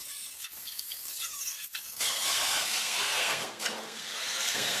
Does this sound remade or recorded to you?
remade